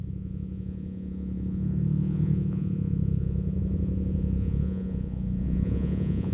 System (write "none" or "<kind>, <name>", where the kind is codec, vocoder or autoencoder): vocoder, Vocos